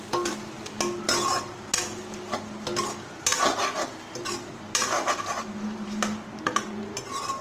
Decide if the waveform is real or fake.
real